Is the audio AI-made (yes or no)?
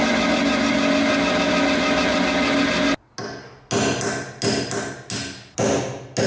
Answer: no